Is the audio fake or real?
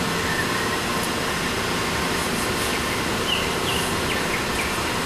real